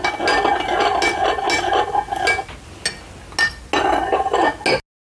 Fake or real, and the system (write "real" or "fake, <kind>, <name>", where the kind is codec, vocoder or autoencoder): real